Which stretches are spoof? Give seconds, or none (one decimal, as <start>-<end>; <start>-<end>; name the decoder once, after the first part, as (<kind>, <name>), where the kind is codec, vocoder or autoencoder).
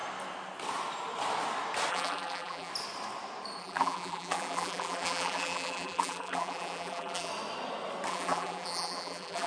1.9-2.7 (vocoder, BigVGAN v2); 3.6-7.3; 8.1-9.5